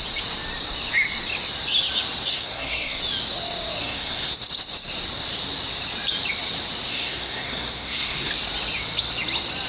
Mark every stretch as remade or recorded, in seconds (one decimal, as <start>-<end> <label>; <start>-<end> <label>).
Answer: 0.0-2.3 recorded; 2.3-3.0 remade; 3.0-3.8 recorded; 3.8-4.3 remade; 4.3-6.9 recorded; 6.9-8.3 remade; 8.3-9.7 recorded